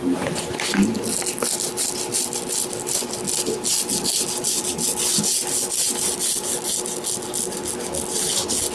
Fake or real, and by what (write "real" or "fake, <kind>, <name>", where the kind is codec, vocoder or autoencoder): real